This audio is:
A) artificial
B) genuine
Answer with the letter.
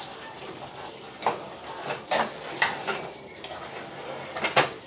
B